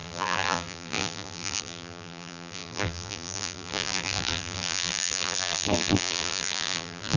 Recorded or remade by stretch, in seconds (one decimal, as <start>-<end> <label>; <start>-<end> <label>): 0.0-7.2 remade